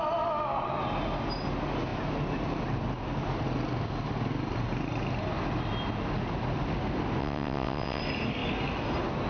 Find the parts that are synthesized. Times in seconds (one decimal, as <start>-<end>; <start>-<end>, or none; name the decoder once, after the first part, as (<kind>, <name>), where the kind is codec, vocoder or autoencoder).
7.2-8.0 (vocoder, WaveNeXt)